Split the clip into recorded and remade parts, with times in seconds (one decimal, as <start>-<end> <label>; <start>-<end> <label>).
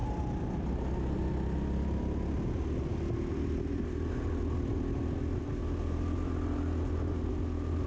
0.0-7.9 recorded